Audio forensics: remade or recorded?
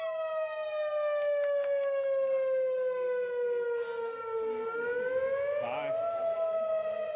recorded